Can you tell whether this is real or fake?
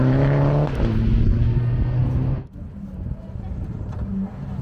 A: real